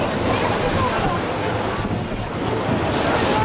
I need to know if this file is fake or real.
real